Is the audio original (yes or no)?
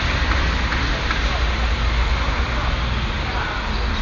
yes